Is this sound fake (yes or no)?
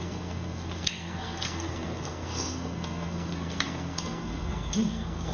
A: yes